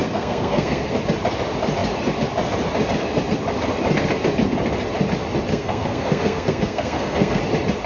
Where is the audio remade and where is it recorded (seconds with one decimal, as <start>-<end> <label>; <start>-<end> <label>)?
0.0-1.0 remade; 1.0-5.5 recorded; 5.5-7.4 remade; 7.4-7.9 recorded